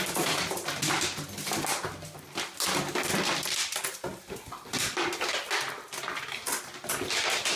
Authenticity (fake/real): real